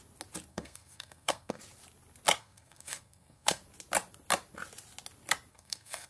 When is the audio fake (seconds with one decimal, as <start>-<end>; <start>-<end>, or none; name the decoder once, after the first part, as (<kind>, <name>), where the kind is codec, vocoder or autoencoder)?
0.5-1.6 (codec, SNAC); 2.4-3.6; 5.5-6.1